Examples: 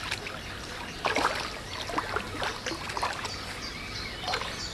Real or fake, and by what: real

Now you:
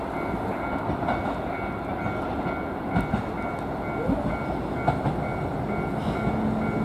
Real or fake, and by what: real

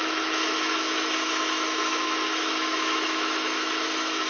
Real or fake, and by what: fake, autoencoder, DAC-VAE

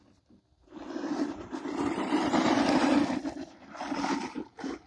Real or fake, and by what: real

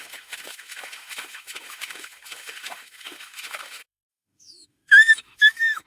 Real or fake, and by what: fake, autoencoder, DAC-VAE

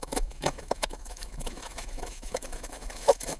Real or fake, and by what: fake, autoencoder, DAC-VAE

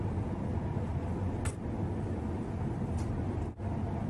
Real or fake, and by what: real